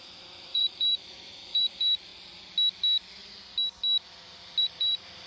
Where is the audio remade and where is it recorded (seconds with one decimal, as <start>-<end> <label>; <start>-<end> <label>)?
0.0-2.1 remade; 2.1-4.6 recorded; 4.6-5.3 remade